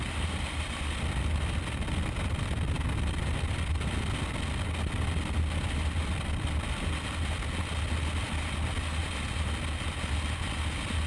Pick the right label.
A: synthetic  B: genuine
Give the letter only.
B